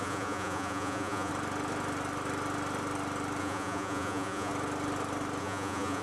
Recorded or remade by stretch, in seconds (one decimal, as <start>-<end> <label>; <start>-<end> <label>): 0.0-1.3 remade; 1.3-3.4 recorded; 3.4-4.5 remade; 4.5-5.4 recorded; 5.4-6.0 remade